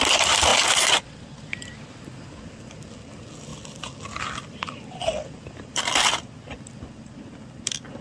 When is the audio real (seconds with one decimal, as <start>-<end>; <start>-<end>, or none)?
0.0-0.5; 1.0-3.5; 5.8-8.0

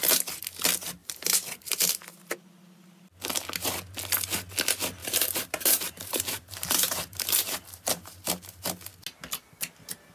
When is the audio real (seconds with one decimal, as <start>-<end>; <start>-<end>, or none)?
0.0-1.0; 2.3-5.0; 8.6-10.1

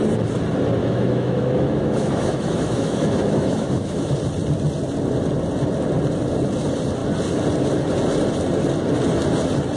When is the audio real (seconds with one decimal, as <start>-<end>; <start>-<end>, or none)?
0.0-0.8; 4.1-9.8

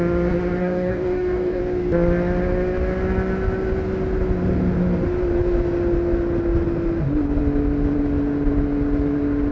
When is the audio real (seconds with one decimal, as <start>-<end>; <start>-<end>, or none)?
0.0-0.6; 1.6-9.5

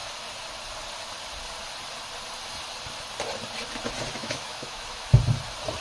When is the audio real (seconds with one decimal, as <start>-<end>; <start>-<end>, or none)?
0.0-4.2; 5.1-5.8

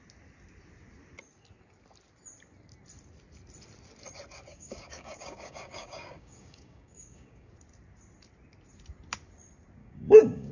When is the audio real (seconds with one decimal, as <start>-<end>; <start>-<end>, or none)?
0.0-4.5; 7.5-9.8